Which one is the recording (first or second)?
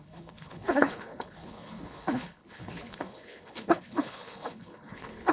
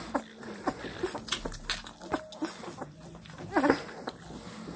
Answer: second